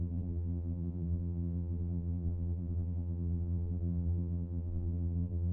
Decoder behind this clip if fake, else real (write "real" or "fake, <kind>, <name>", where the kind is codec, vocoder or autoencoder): fake, vocoder, BigVGAN v2